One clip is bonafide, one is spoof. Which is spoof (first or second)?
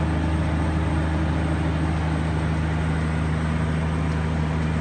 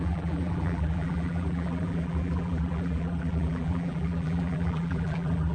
second